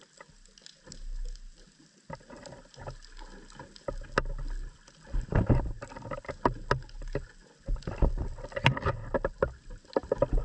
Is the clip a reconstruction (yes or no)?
no